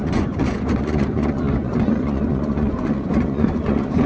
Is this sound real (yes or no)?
no